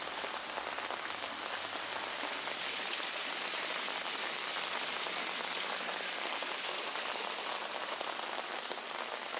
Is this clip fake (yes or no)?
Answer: no